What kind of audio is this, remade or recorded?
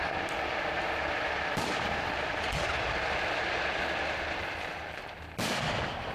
remade